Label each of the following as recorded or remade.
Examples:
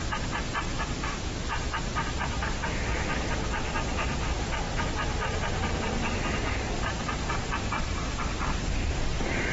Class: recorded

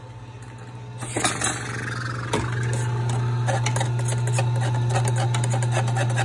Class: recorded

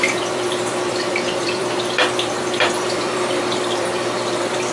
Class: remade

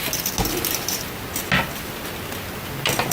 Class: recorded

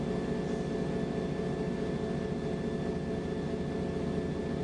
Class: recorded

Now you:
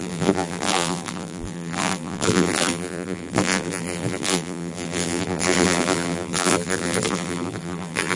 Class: remade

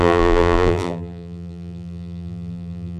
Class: remade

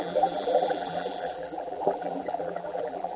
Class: remade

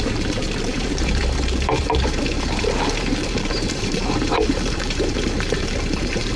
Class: remade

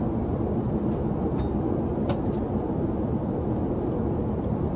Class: recorded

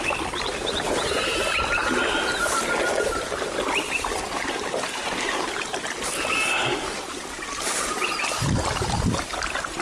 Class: recorded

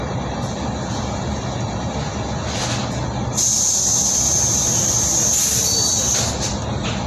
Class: recorded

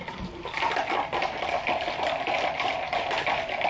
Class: remade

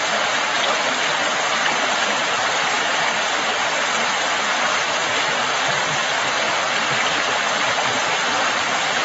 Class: recorded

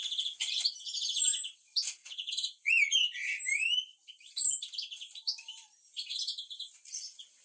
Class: remade